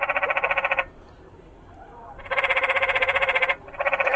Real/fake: fake